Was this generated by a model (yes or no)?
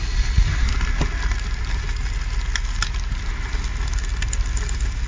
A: no